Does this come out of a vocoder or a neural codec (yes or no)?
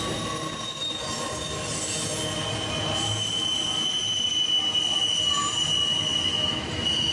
no